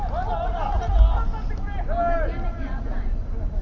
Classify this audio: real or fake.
real